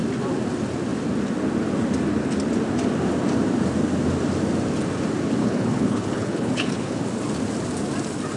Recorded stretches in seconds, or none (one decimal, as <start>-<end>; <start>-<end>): 0.0-5.4; 7.0-8.4